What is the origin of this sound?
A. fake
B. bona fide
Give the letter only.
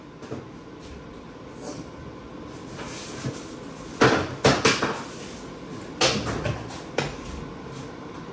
B